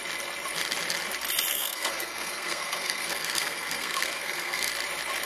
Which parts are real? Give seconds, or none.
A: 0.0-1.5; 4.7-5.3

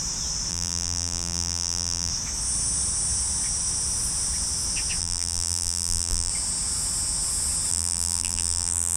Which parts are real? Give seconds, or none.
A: 0.0-0.5; 2.1-5.0; 6.3-7.7